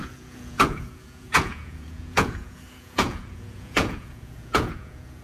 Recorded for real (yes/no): no